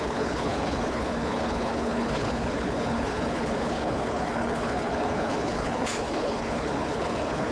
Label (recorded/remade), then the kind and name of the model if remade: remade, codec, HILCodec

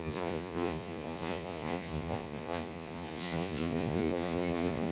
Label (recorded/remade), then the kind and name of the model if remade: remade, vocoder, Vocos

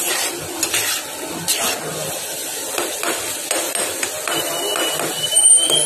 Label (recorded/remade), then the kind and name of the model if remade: recorded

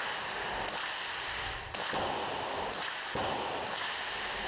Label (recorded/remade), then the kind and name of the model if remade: recorded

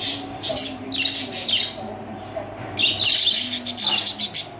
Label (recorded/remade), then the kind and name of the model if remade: recorded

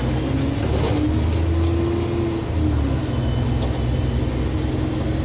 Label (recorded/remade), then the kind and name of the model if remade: recorded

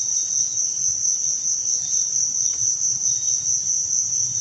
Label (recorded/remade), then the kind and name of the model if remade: recorded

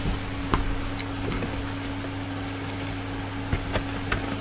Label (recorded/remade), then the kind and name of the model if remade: recorded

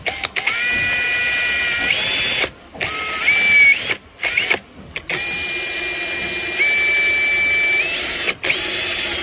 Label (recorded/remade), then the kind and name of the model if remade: recorded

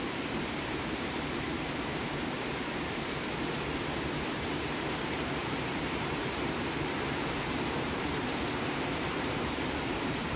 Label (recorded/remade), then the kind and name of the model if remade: remade, vocoder, BigVGAN v2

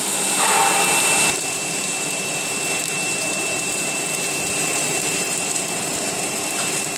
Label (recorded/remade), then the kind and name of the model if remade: remade, vocoder, BigVGAN v2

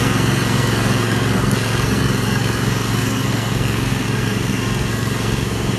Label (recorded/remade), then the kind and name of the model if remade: remade, codec, SNAC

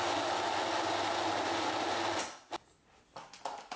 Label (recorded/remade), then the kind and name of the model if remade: recorded